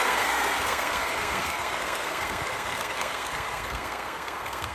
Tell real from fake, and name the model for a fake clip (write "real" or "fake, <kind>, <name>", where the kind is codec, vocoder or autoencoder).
fake, codec, SNAC